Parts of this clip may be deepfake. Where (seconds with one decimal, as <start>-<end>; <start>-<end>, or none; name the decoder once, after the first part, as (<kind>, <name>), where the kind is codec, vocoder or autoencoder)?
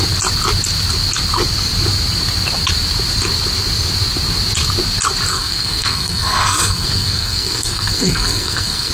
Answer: 5.3-8.9 (codec, SNAC)